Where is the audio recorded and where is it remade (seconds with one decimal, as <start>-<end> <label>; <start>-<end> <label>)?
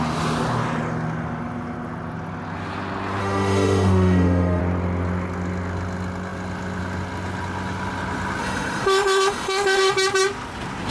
0.0-3.2 recorded; 3.2-4.6 remade; 4.6-8.4 recorded; 8.4-9.9 remade; 9.9-10.9 recorded